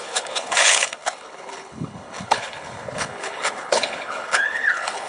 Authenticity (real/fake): fake